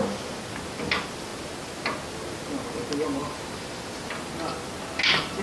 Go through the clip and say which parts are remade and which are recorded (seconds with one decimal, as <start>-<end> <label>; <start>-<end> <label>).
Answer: 0.0-3.2 recorded; 3.2-4.1 remade; 4.1-5.4 recorded